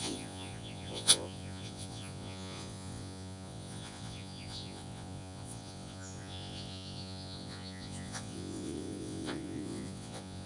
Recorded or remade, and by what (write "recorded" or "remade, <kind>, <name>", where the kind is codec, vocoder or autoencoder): remade, vocoder, Vocos